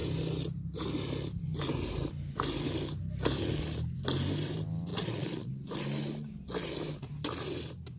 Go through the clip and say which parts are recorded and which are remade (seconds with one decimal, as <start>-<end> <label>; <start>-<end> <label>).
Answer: 0.0-4.9 recorded; 4.9-5.5 remade; 5.5-8.0 recorded